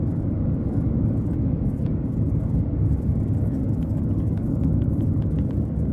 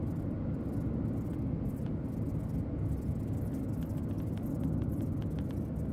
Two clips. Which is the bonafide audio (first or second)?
second